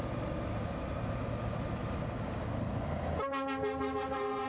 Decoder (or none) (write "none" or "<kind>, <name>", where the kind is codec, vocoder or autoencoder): none